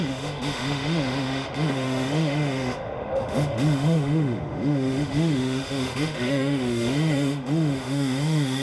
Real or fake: fake